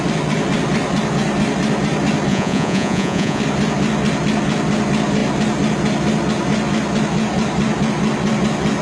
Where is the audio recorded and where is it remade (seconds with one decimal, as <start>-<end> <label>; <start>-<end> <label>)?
0.0-2.3 recorded; 2.3-3.4 remade; 3.4-8.8 recorded